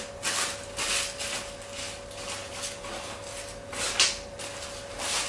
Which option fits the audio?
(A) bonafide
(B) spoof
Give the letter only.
A